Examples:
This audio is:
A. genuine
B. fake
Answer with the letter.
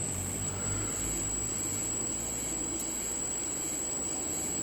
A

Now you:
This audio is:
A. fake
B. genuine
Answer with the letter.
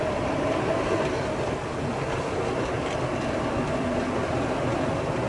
A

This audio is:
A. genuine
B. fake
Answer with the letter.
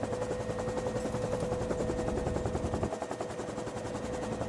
A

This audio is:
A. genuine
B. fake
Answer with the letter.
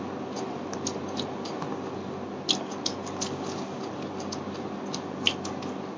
A